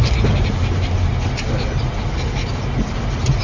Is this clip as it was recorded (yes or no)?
yes